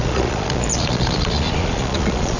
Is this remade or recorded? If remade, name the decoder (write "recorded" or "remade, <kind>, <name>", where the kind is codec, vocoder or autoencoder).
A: remade, vocoder, Vocos